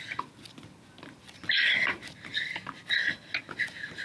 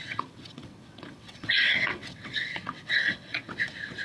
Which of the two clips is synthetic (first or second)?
second